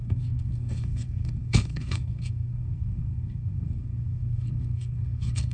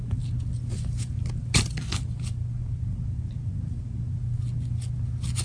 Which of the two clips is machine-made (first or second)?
first